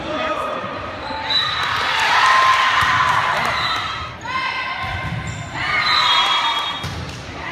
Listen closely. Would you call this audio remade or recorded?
remade